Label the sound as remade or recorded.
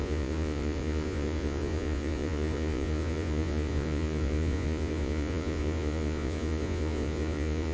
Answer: remade